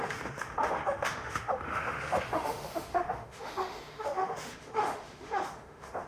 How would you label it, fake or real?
fake